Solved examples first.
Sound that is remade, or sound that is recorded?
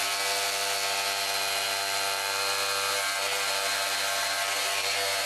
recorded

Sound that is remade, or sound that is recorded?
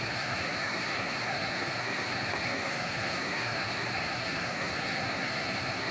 remade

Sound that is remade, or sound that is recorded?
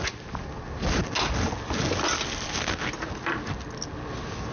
recorded